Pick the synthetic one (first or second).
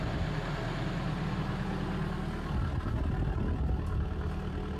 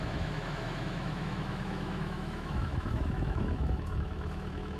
second